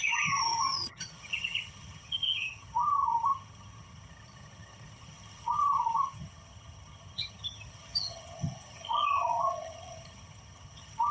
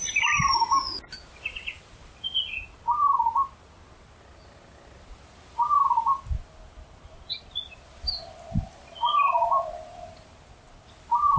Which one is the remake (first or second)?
first